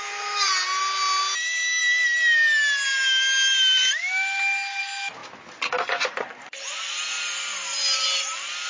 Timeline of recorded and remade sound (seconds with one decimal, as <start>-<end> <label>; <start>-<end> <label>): 0.0-8.7 recorded